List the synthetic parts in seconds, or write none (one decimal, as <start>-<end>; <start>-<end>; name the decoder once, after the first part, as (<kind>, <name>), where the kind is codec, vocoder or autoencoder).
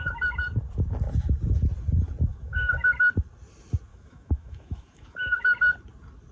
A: 2.3-2.9 (autoencoder, DAC-VAE); 3.9-5.4